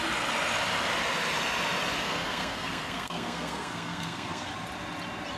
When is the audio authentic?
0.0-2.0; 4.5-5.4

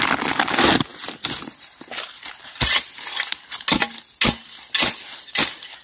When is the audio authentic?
0.0-5.8

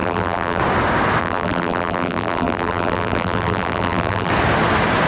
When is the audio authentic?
0.6-1.2; 4.3-5.1

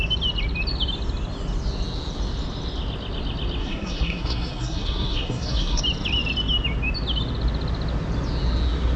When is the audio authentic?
0.0-3.6; 5.8-9.0

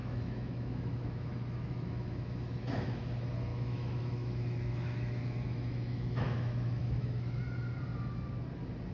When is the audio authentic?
3.0-3.5; 7.4-8.9

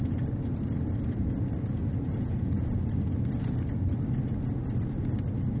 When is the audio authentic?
0.0-2.1; 2.9-5.6